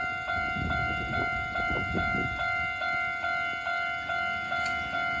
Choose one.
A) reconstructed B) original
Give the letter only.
B